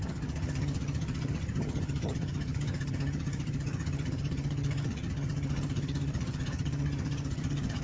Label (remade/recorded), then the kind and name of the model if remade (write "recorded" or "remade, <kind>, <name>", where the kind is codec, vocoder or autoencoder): remade, vocoder, HiFi-GAN